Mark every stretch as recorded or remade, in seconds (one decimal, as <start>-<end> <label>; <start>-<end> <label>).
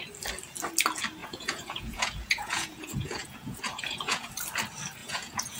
0.0-1.2 recorded; 1.2-4.3 remade; 4.3-5.0 recorded; 5.0-5.6 remade